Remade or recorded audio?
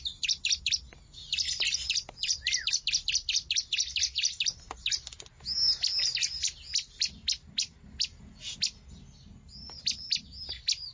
recorded